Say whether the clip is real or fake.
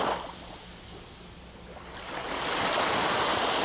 real